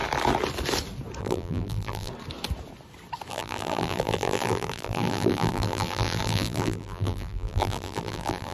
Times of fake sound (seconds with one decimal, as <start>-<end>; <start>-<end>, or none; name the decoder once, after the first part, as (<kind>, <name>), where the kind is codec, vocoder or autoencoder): 1.2-2.1 (vocoder, BigVGAN v2); 3.3-8.5